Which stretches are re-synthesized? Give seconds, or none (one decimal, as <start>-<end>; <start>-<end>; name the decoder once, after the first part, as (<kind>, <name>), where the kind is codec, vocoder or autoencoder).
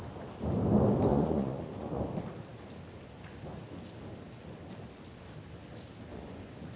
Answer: 1.1-2.0 (vocoder, Vocos); 6.1-6.8